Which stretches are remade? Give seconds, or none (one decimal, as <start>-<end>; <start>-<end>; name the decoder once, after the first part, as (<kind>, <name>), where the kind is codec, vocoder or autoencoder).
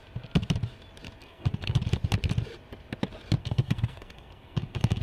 1.2-1.8 (codec, SNAC); 3.4-5.0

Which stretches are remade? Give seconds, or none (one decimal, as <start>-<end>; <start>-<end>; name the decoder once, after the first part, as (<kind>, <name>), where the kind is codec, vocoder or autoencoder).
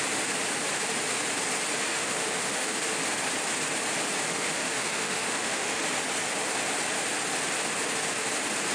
1.9-2.7 (autoencoder, DAC-VAE); 4.3-5.8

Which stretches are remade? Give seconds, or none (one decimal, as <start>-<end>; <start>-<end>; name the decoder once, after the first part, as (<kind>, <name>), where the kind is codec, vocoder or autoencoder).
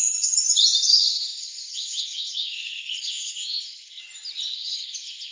0.9-4.0 (codec, HILCodec); 4.5-5.3